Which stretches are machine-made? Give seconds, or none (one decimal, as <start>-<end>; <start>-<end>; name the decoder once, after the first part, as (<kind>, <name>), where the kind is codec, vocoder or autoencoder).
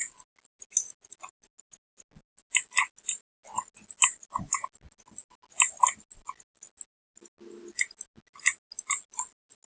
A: none